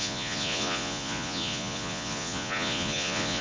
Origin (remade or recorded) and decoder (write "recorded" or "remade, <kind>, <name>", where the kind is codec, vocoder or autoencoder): remade, vocoder, Vocos